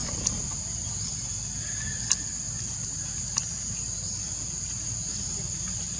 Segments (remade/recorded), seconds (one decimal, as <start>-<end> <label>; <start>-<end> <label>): 0.0-6.0 recorded